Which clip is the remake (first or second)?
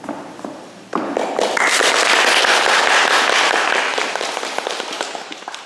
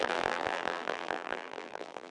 second